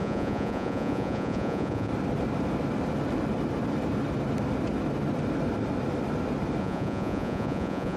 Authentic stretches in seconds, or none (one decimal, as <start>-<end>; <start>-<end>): 1.9-6.6